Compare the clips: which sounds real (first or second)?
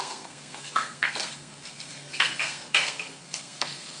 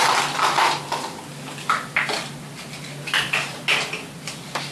second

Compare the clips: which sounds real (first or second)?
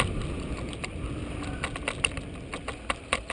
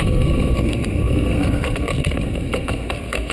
first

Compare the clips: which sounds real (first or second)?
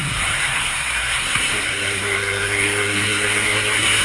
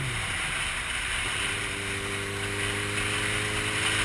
second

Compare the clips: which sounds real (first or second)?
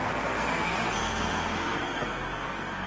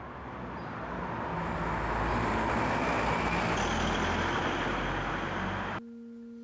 second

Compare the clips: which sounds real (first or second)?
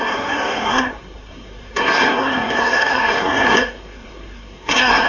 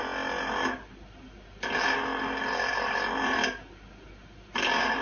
second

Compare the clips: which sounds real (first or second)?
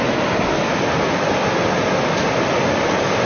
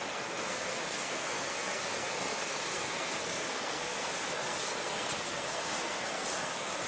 first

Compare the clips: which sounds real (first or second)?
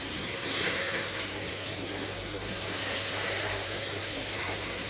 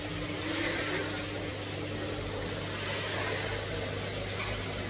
second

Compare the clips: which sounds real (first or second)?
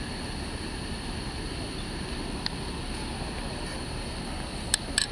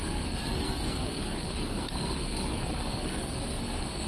first